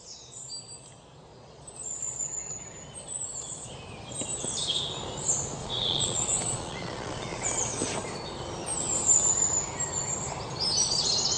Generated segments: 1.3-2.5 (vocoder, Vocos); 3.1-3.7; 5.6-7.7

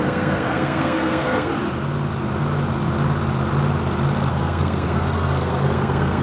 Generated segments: 0.0-1.5 (codec, SNAC); 4.3-6.2

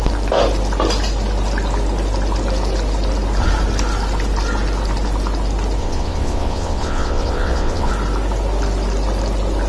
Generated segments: 5.8-7.9 (vocoder, WaveNeXt)

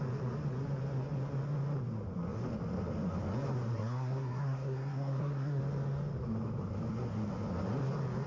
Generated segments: 3.7-5.6 (codec, SNAC)

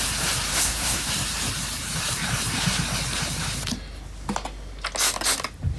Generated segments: 0.5-1.1 (codec, SNAC)